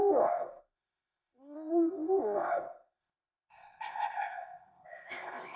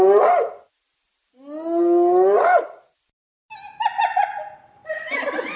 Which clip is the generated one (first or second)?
first